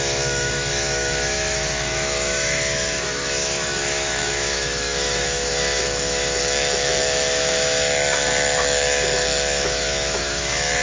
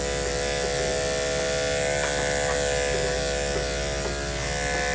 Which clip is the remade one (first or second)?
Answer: first